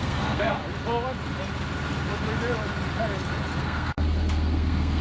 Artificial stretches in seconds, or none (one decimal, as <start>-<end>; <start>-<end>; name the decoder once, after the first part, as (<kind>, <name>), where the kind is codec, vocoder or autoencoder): 0.0-0.6 (codec, SNAC); 3.6-5.0